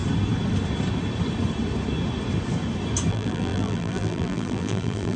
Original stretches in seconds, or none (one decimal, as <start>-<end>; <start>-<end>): 0.0-3.1